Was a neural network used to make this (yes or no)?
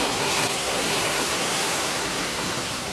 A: yes